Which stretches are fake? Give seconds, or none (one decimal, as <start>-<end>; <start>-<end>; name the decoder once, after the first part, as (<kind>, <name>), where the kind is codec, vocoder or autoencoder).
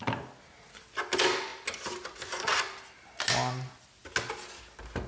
none